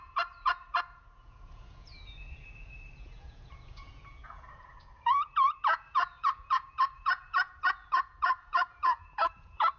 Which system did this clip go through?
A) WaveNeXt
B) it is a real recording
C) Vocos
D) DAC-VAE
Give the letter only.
C